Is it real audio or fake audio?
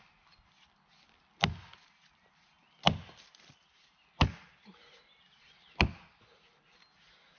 real